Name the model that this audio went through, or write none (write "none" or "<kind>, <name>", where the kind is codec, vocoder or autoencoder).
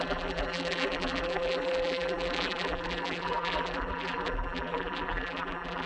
vocoder, BigVGAN v2